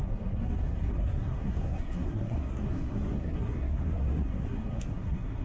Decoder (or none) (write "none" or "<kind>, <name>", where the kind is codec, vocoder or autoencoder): codec, SNAC